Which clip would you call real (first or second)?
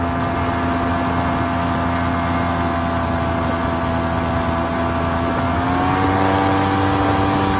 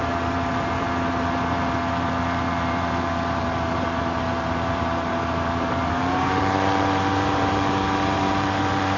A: first